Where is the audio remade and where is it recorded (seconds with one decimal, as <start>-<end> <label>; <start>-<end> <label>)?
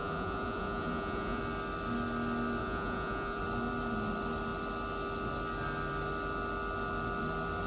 0.0-1.4 remade; 1.4-2.6 recorded; 2.6-3.4 remade; 3.4-7.7 recorded